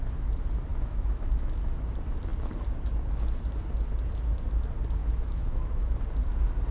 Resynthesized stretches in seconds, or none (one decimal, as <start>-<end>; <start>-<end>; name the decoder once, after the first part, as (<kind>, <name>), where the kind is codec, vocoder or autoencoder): 0.7-1.6 (autoencoder, DAC-VAE); 5.0-6.0